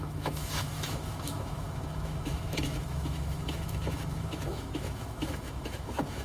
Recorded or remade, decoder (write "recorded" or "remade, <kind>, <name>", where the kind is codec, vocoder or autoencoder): remade, autoencoder, DAC-VAE